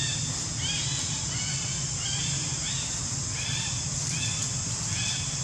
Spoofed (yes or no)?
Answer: no